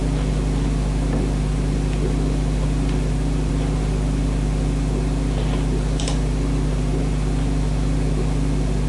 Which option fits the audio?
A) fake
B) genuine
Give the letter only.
B